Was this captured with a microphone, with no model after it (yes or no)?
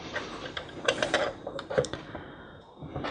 no